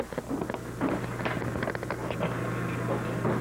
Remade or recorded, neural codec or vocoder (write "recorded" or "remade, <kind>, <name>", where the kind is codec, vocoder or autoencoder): recorded